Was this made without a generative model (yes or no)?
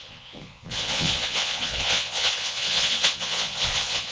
no